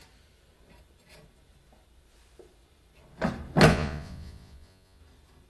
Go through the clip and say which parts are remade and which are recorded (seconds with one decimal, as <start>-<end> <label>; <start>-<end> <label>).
0.0-3.7 recorded; 3.7-5.0 remade; 5.0-5.5 recorded